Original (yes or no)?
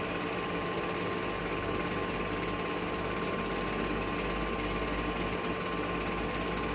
yes